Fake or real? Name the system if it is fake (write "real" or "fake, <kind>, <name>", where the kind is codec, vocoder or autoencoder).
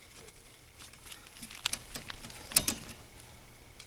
real